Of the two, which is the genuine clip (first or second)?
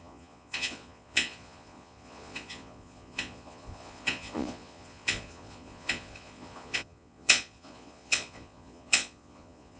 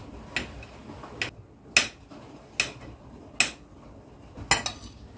second